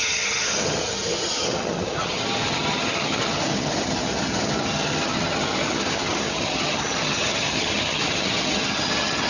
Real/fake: fake